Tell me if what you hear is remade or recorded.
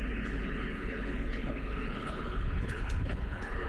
remade